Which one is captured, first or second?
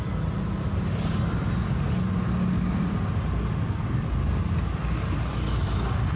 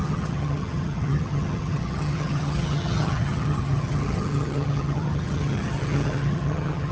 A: first